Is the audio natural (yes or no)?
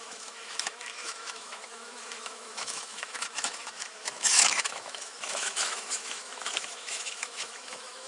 no